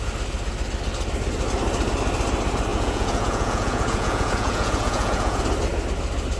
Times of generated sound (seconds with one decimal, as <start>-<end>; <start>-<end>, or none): 2.7-5.4